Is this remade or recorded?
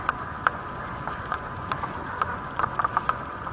remade